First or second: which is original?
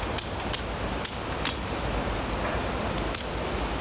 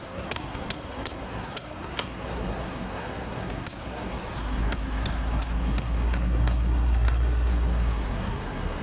first